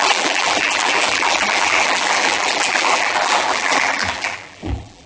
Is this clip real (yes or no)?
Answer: no